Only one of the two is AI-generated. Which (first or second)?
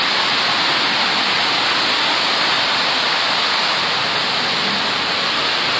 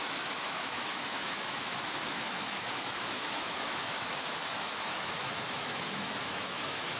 second